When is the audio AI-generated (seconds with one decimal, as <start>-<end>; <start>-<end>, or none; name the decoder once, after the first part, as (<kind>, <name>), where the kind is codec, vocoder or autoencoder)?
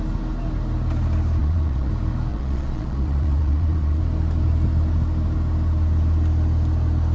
1.4-1.9 (vocoder, Vocos); 2.3-4.0